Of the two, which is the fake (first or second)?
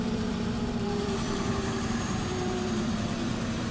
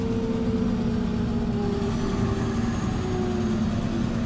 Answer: first